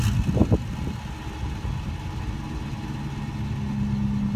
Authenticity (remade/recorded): recorded